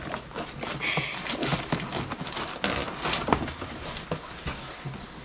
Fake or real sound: real